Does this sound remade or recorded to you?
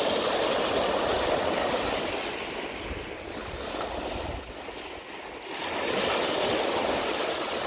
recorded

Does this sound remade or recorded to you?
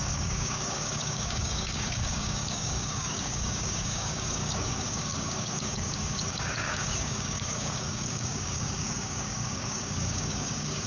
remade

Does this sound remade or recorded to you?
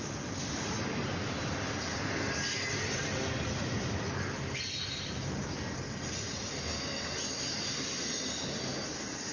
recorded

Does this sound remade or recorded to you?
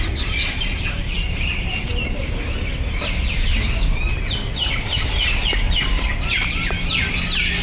recorded